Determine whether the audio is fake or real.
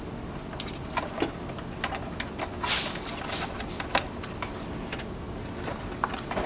real